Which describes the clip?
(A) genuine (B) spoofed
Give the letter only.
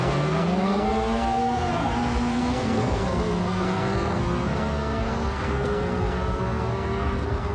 B